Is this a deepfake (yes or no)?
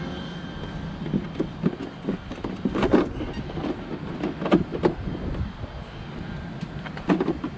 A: no